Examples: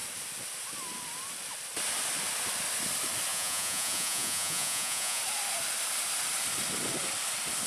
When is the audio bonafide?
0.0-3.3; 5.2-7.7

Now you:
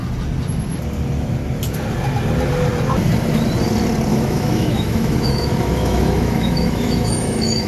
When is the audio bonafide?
0.0-4.1

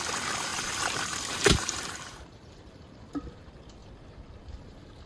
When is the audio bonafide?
0.0-0.5; 2.7-5.1

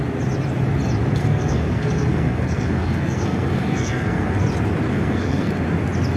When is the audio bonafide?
0.0-1.2; 4.4-4.9; 5.5-6.2

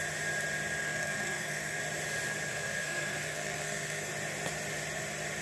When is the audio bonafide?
0.0-0.8; 1.8-2.5; 4.1-5.4

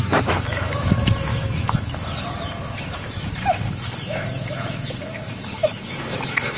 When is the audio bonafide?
none

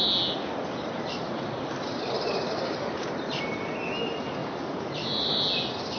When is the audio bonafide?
0.0-0.6; 3.5-4.4; 5.4-6.0